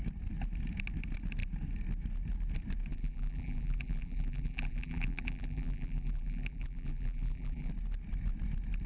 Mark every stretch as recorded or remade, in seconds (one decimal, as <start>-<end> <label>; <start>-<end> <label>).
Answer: 0.0-2.9 recorded; 2.9-7.7 remade; 7.7-8.9 recorded